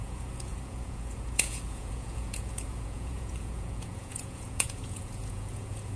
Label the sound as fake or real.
fake